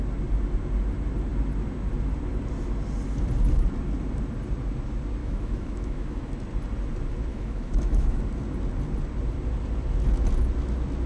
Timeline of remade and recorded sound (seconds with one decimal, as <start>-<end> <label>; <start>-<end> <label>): 0.0-5.2 recorded; 5.2-6.3 remade; 6.3-7.3 recorded; 7.3-8.2 remade; 8.2-11.1 recorded